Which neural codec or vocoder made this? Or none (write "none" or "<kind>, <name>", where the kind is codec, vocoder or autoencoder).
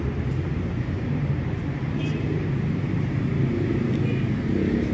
none